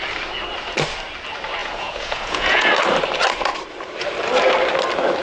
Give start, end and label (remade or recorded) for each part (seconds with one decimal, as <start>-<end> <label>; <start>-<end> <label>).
0.0-1.6 recorded; 1.6-2.7 remade; 2.7-5.2 recorded